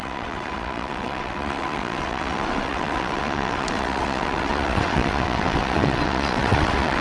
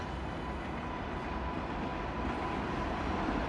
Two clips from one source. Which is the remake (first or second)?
first